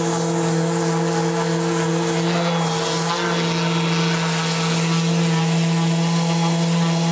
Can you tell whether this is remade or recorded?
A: recorded